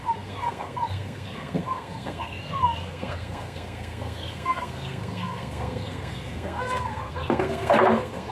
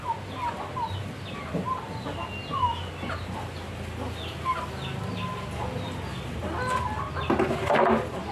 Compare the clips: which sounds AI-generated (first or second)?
first